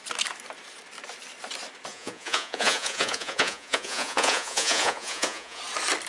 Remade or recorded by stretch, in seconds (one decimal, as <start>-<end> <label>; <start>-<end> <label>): 0.0-1.9 recorded; 1.9-5.6 remade; 5.6-6.1 recorded